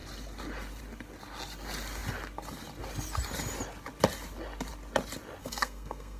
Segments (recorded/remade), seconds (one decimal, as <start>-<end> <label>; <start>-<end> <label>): 0.0-5.4 recorded; 5.4-6.2 remade

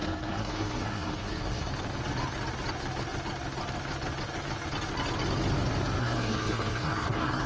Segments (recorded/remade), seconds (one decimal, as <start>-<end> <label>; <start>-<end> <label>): 0.0-1.7 remade; 1.7-6.0 recorded; 6.0-7.5 remade

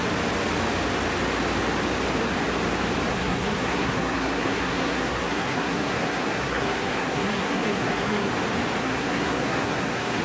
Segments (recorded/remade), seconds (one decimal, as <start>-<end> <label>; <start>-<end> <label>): 0.0-3.1 recorded; 3.1-8.3 remade; 8.3-8.8 recorded; 8.8-10.2 remade

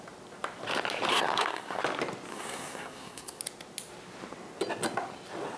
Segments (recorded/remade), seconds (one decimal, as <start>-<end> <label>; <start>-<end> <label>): 0.0-1.1 recorded; 1.1-1.8 remade; 1.8-2.3 recorded; 2.3-3.4 remade; 3.4-5.6 recorded

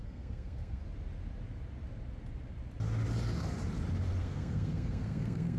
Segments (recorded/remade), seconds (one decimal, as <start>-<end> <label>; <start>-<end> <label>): 0.0-0.8 remade; 0.8-4.2 recorded; 4.2-5.6 remade